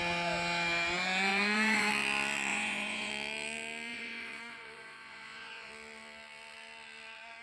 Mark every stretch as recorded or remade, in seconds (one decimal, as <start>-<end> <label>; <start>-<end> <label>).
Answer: 0.0-1.3 recorded; 1.3-1.9 remade; 1.9-2.5 recorded; 2.5-3.1 remade; 3.1-3.9 recorded; 3.9-5.7 remade; 5.7-7.4 recorded